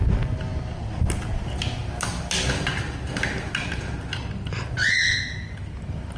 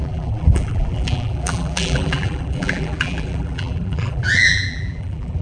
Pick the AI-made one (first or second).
second